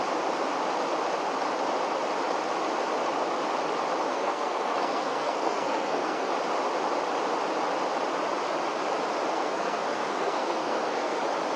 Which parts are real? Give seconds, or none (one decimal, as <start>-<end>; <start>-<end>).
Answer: 0.0-4.1; 6.3-9.3; 11.2-11.6